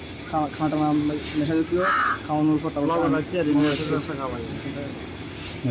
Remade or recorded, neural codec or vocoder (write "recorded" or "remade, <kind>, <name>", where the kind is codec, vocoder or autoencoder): recorded